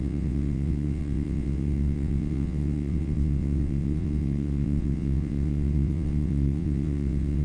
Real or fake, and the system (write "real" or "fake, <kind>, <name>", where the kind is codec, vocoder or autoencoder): fake, vocoder, WaveNeXt